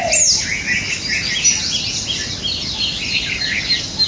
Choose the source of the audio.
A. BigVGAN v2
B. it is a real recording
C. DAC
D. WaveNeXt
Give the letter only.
B